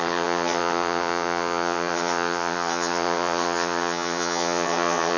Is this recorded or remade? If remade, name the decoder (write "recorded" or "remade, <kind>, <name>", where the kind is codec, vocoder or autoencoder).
remade, vocoder, HiFi-GAN